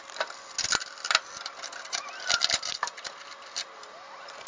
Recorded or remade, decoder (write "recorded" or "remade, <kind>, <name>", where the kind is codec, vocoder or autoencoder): recorded